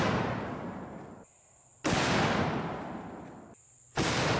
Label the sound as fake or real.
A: real